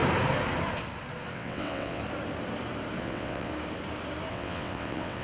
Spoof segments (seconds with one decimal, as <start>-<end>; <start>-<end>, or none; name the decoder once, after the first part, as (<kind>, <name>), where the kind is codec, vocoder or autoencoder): 1.3-2.0 (vocoder, WaveNeXt); 3.0-3.5; 4.3-5.2